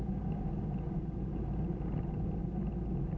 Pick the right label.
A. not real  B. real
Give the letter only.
B